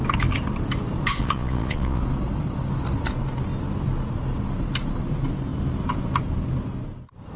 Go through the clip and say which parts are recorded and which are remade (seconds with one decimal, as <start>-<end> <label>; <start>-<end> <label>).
0.0-1.1 recorded; 1.1-2.0 remade; 2.0-7.4 recorded